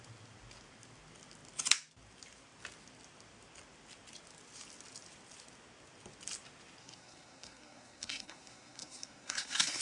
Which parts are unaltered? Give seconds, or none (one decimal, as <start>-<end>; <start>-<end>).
0.0-6.8